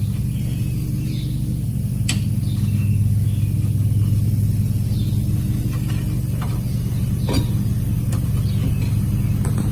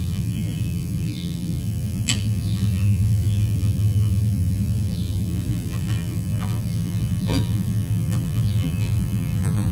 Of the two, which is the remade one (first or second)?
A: second